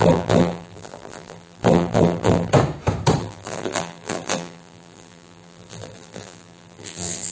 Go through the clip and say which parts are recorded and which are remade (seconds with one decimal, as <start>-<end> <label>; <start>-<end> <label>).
0.0-2.5 remade; 2.5-3.2 recorded; 3.2-7.3 remade